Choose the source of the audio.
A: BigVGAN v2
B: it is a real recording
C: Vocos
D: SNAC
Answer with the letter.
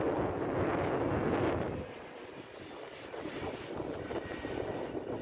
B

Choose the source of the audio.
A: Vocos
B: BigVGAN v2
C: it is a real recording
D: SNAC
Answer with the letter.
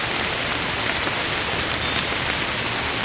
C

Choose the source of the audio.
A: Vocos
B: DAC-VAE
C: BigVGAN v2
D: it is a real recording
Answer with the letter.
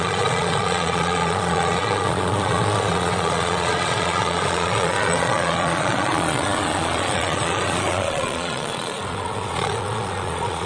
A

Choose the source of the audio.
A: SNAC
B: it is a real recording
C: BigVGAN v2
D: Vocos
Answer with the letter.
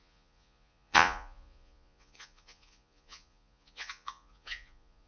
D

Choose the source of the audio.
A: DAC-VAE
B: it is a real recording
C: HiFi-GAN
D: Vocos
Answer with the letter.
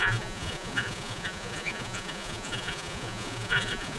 D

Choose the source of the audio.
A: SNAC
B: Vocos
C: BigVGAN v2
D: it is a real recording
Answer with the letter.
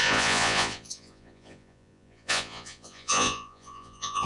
B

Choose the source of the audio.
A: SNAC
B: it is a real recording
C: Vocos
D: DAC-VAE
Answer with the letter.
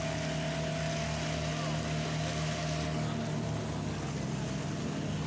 B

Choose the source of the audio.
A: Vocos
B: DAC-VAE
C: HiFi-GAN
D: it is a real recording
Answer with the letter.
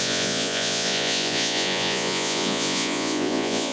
A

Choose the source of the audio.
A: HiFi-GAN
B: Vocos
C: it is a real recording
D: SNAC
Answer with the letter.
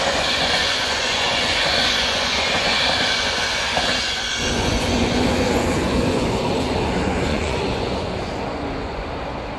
B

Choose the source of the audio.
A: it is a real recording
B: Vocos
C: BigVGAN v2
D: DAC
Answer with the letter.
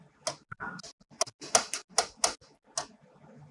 A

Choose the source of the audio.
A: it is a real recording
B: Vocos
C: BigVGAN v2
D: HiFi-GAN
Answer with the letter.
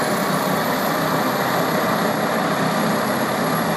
A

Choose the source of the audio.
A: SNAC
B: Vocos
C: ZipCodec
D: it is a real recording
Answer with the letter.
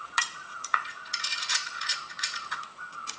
B